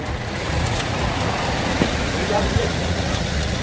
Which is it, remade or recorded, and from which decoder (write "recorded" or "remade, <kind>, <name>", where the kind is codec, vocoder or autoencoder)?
remade, vocoder, Vocos